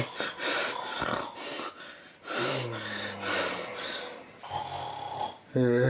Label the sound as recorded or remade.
recorded